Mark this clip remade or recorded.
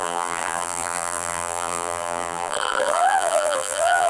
remade